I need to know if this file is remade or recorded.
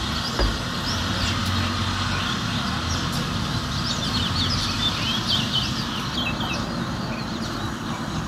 recorded